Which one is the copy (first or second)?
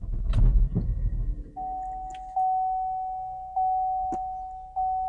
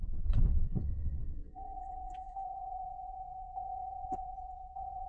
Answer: second